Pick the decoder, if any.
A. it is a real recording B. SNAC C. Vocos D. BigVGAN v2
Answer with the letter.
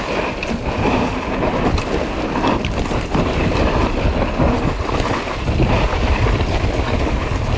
A